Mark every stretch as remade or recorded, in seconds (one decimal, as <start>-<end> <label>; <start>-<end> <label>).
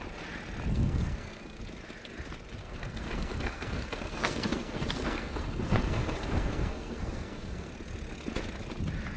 0.0-0.7 recorded; 0.7-1.6 remade; 1.6-2.6 recorded; 2.6-7.7 remade; 7.7-9.2 recorded